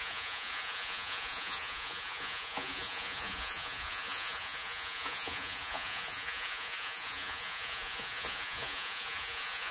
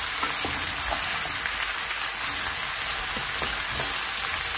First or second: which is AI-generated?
first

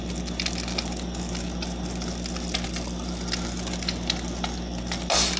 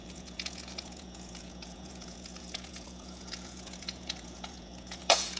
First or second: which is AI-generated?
second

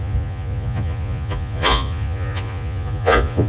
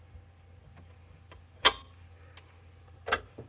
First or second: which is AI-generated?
first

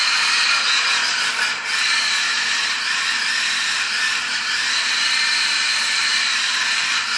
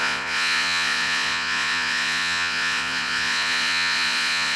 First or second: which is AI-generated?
second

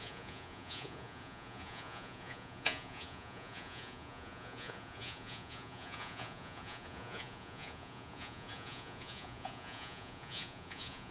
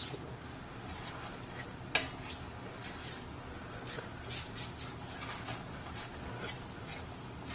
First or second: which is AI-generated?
first